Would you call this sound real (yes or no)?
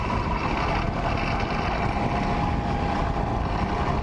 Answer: yes